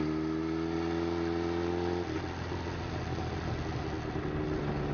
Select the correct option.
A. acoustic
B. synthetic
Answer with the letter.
A